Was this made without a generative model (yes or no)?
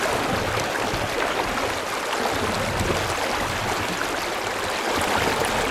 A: yes